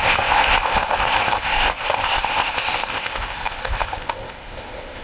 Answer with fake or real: fake